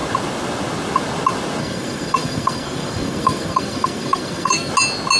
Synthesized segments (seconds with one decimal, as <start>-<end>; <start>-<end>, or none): 1.6-4.7